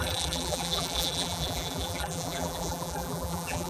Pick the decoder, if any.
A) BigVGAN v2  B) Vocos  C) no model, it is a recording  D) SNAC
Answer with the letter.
A